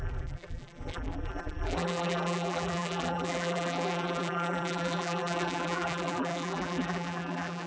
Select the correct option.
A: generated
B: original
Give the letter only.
A